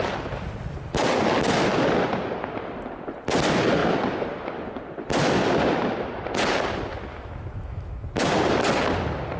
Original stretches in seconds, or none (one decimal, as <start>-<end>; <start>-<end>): 0.0-7.1; 8.3-9.4